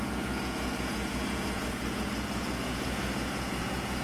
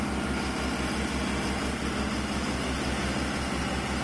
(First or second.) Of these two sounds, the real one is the second